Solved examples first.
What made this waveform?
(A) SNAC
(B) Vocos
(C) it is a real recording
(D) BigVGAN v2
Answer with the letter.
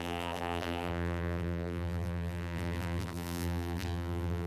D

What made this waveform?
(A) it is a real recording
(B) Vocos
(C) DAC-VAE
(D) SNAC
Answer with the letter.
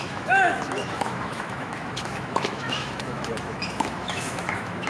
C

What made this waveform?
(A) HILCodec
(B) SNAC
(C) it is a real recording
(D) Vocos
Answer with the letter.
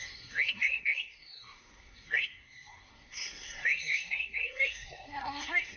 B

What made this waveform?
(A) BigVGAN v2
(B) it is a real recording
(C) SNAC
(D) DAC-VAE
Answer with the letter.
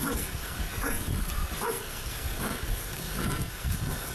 C